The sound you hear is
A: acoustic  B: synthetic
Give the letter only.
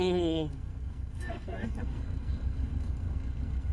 B